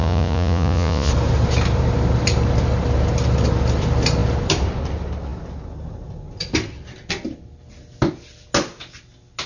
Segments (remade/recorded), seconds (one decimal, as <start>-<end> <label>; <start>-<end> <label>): 0.0-1.1 remade; 1.1-9.5 recorded